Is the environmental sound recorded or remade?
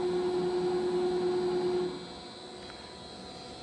recorded